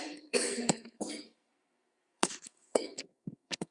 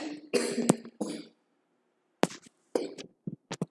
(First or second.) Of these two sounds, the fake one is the first